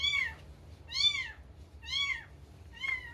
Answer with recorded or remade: recorded